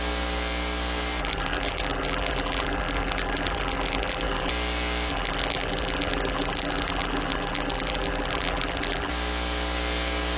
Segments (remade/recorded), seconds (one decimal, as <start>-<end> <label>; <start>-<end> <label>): 0.0-1.2 recorded; 1.2-4.5 remade; 4.5-5.1 recorded; 5.1-9.1 remade; 9.1-10.4 recorded